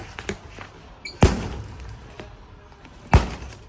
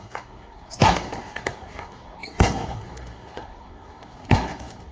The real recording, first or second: first